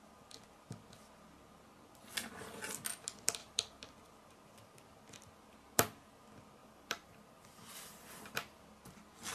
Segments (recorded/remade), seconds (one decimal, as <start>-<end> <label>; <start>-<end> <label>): 0.0-6.6 recorded; 6.6-8.6 remade; 8.6-9.3 recorded